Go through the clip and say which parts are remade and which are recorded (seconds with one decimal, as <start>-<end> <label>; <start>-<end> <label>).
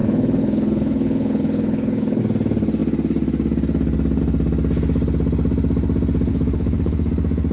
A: 0.0-2.2 remade; 2.2-6.3 recorded; 6.3-7.1 remade; 7.1-7.5 recorded